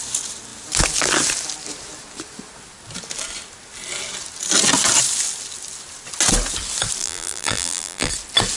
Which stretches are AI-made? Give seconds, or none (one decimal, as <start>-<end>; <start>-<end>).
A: 7.0-8.1